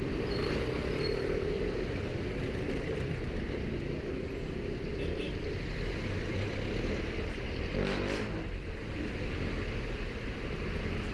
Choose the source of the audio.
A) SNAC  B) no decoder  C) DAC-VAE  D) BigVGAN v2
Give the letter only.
B